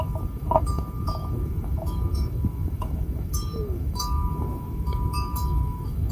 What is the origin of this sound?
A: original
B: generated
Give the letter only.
B